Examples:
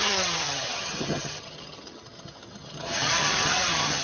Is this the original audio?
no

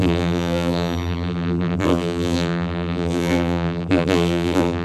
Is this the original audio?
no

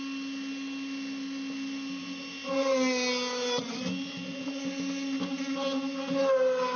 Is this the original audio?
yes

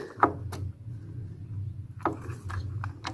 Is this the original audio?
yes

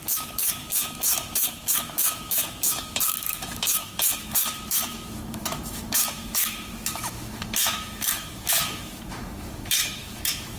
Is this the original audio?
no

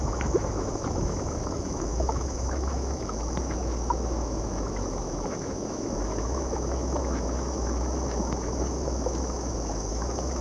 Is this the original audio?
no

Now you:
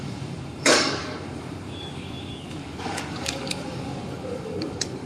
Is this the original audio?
no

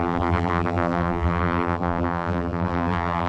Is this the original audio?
no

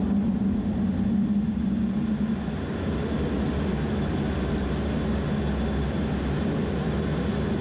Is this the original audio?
yes